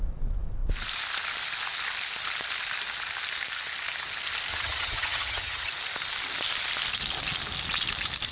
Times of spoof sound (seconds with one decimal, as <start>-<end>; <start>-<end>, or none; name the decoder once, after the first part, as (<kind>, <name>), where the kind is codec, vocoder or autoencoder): 4.5-5.7 (vocoder, HiFi-GAN)